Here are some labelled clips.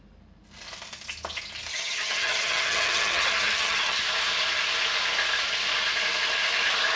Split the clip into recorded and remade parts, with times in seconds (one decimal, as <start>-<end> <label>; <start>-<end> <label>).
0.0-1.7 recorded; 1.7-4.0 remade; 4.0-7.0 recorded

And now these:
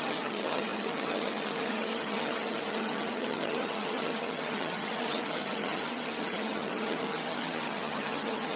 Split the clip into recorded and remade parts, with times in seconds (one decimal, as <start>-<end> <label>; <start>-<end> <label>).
0.0-8.6 remade

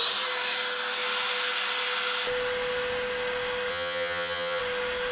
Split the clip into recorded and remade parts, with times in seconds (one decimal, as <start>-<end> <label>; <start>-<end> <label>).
0.0-3.7 recorded; 3.7-4.6 remade; 4.6-5.1 recorded

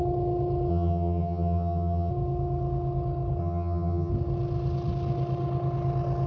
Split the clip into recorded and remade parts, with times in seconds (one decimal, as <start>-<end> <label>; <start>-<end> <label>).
0.0-0.7 recorded; 0.7-2.1 remade; 2.1-3.4 recorded; 3.4-4.1 remade; 4.1-6.3 recorded

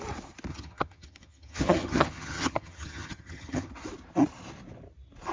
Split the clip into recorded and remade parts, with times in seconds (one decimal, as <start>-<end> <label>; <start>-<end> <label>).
0.0-0.5 recorded; 0.5-3.7 remade; 3.7-5.3 recorded

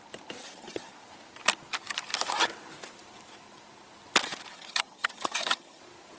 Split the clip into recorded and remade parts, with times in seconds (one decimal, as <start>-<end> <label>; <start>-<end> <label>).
0.0-0.4 recorded; 0.4-0.9 remade; 0.9-4.5 recorded; 4.5-5.8 remade; 5.8-6.2 recorded